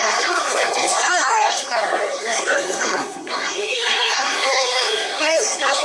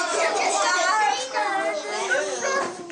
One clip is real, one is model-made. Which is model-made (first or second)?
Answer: first